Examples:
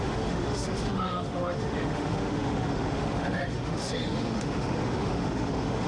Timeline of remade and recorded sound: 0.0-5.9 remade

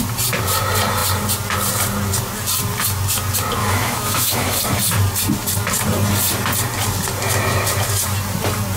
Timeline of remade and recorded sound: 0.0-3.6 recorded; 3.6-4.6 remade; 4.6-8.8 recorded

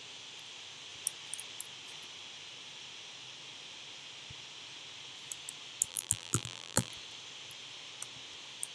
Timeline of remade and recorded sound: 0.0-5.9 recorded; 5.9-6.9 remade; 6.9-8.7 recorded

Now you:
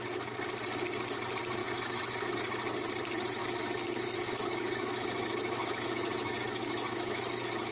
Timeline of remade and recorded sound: 0.0-1.6 recorded; 1.6-2.3 remade; 2.3-3.4 recorded; 3.4-7.7 remade

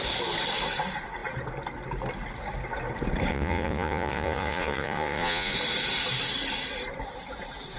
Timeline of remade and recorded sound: 0.0-3.3 recorded; 3.3-5.5 remade; 5.5-7.8 recorded